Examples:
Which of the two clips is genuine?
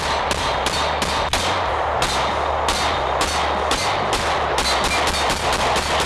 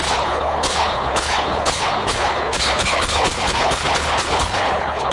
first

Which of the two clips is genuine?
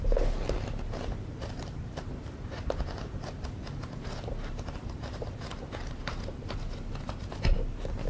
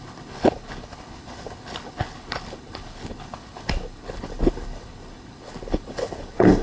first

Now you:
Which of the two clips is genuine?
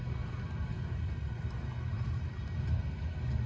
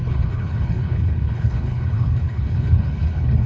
first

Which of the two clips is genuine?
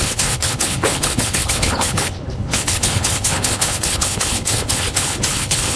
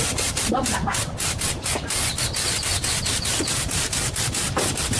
second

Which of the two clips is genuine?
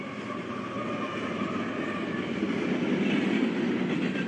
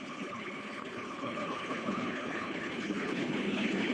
first